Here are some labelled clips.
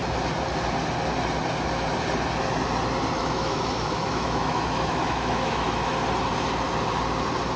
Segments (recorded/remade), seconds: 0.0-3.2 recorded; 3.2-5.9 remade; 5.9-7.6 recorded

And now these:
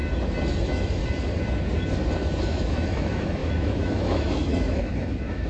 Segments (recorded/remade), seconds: 0.0-0.6 recorded; 0.6-1.0 remade; 1.0-2.4 recorded; 2.4-5.5 remade